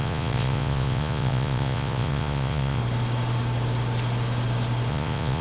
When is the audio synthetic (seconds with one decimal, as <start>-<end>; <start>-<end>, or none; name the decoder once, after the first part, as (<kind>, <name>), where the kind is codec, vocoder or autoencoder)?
0.0-2.8 (vocoder, Vocos); 4.9-5.4